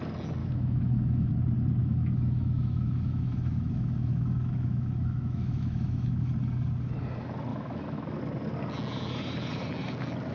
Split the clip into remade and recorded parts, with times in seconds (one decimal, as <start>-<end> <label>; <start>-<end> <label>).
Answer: 0.0-0.4 recorded; 0.4-1.3 remade; 1.3-1.8 recorded; 1.8-6.3 remade; 6.3-7.5 recorded; 7.5-8.2 remade; 8.2-10.3 recorded